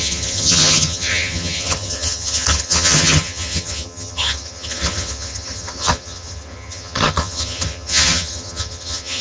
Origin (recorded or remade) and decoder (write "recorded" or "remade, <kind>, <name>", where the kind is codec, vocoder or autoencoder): remade, vocoder, HiFi-GAN